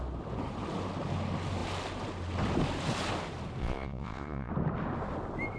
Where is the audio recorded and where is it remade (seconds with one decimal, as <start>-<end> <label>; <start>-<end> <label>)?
0.0-3.6 recorded; 3.6-4.5 remade; 4.5-5.6 recorded